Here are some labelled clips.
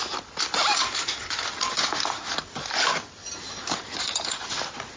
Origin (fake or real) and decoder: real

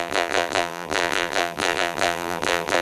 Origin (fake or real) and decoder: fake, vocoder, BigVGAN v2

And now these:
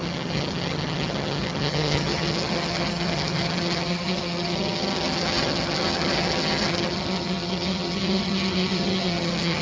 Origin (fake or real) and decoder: fake, vocoder, HiFi-GAN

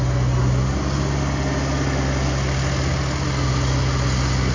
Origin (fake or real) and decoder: real